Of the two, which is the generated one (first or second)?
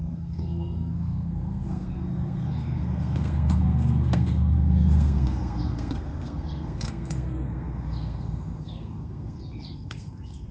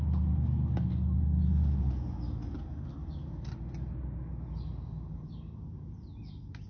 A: first